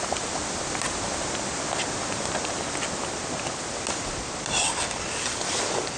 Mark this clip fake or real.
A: real